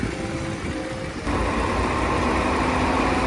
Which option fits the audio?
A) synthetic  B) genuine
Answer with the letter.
B